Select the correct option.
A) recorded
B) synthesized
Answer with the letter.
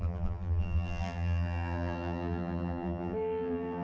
B